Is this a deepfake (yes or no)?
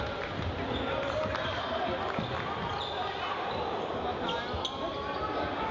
no